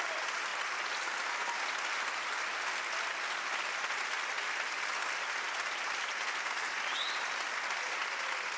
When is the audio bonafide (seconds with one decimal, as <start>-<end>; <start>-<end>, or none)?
0.0-8.6